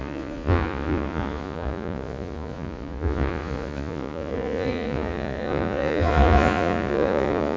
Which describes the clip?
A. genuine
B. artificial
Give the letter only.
B